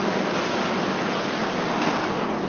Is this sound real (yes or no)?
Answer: yes